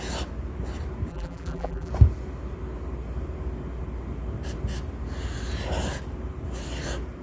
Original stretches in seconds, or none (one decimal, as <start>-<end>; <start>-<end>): 0.0-1.1; 1.9-7.2